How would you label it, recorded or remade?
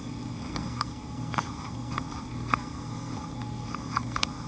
remade